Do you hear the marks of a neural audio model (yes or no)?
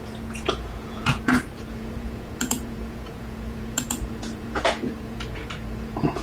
yes